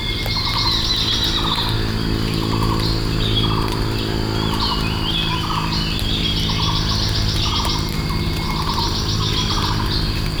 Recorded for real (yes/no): yes